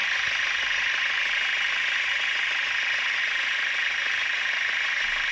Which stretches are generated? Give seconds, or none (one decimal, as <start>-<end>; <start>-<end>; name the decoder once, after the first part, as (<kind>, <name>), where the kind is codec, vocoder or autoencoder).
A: none